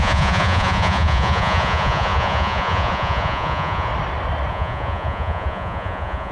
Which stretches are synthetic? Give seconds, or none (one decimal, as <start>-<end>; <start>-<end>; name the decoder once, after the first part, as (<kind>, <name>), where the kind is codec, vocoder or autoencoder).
0.0-3.9 (vocoder, Vocos); 4.5-6.3